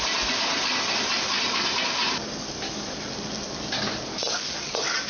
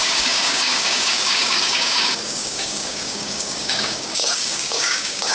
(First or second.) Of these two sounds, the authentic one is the first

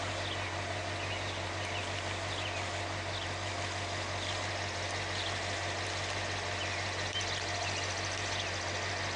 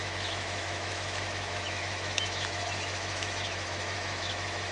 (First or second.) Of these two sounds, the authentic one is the first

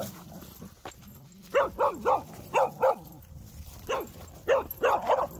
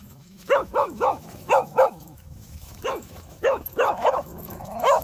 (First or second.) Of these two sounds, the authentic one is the first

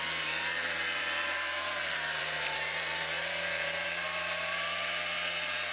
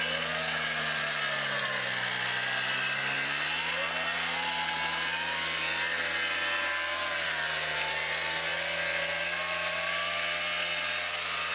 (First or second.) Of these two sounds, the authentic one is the second